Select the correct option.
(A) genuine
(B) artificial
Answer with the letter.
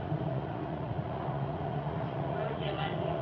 B